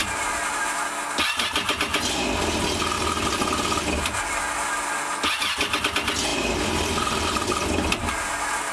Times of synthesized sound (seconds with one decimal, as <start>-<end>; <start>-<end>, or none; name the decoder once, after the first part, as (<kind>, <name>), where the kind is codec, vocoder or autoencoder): 0.0-0.6 (vocoder, BigVGAN v2); 6.3-7.9